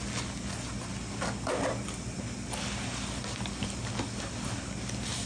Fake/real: real